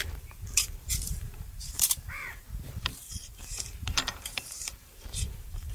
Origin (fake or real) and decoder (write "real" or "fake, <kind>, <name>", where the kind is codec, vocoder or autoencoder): fake, vocoder, BigVGAN v2